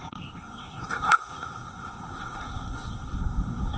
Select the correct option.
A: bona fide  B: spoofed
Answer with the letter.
B